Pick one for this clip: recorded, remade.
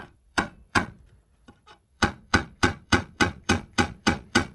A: remade